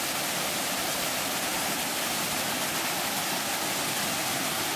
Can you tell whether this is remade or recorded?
recorded